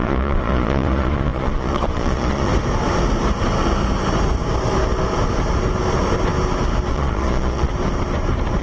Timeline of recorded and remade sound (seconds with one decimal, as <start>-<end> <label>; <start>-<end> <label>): 0.0-2.5 remade; 2.5-6.9 recorded; 6.9-7.7 remade; 7.7-8.6 recorded